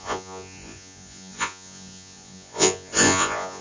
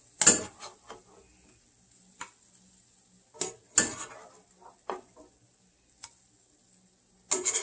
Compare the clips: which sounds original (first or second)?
second